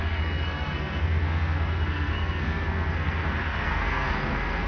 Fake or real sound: fake